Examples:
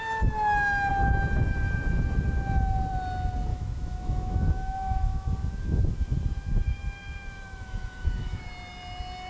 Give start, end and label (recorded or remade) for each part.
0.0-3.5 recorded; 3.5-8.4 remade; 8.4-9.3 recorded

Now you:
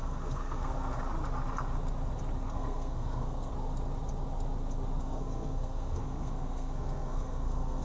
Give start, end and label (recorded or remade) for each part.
0.0-1.0 remade; 1.0-2.4 recorded; 2.4-3.5 remade; 3.5-5.0 recorded; 5.0-7.8 remade

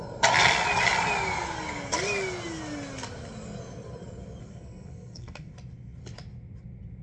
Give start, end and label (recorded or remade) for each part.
0.0-4.4 recorded; 4.4-5.5 remade; 5.5-7.0 recorded

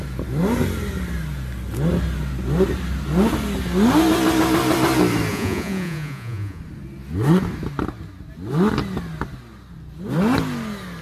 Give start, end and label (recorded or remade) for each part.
0.0-5.3 recorded; 5.3-6.6 remade; 6.6-11.0 recorded

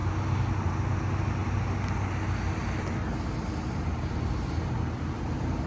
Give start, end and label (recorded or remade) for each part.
0.0-5.7 recorded

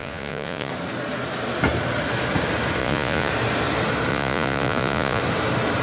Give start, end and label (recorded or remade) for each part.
0.0-0.7 remade; 0.7-2.8 recorded; 2.8-3.3 remade; 3.3-4.1 recorded; 4.1-5.2 remade; 5.2-5.8 recorded

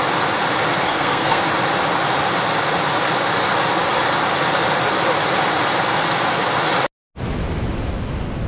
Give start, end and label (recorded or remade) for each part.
0.0-0.7 recorded; 0.7-1.4 remade; 1.4-8.5 recorded

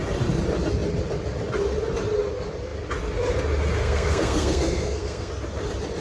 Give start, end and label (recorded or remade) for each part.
0.0-3.8 recorded; 3.8-5.3 remade; 5.3-6.0 recorded